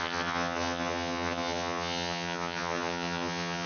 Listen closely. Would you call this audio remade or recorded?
remade